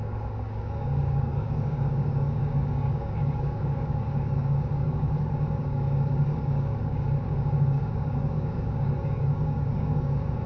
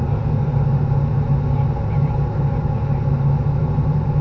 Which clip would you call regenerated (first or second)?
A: first